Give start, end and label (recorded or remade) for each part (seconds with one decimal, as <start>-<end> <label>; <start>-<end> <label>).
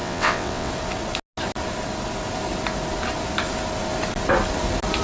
0.0-0.7 remade; 0.7-5.0 recorded